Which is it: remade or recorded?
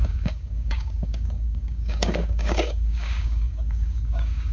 remade